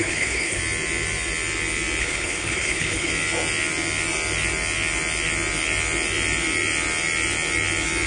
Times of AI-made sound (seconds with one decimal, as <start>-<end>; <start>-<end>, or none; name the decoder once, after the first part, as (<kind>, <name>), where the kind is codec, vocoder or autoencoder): 0.0-0.6 (codec, HILCodec); 2.0-3.1